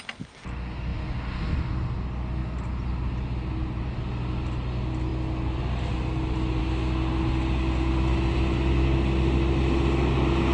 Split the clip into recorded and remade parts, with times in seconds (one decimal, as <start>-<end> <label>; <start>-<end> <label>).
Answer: 0.0-10.5 recorded